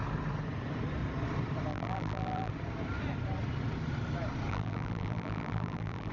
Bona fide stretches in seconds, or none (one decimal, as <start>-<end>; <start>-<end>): 0.0-1.7; 2.5-4.5